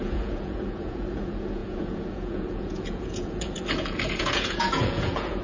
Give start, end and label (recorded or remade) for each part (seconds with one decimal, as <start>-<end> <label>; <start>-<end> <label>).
0.0-5.4 remade